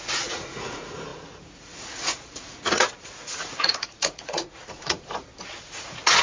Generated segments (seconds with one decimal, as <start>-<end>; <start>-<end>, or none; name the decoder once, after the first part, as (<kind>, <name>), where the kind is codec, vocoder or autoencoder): 0.0-5.3 (vocoder, Vocos); 5.8-6.2